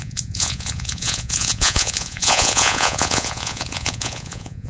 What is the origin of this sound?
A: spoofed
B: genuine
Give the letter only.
A